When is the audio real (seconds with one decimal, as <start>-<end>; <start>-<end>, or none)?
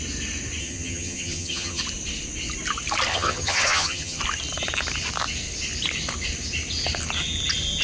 0.0-0.6; 1.8-3.1; 4.2-7.8